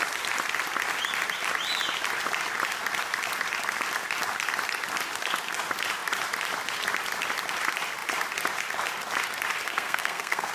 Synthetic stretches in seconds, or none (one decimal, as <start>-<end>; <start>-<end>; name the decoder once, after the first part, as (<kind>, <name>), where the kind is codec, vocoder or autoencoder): 9.6-10.5 (codec, SNAC)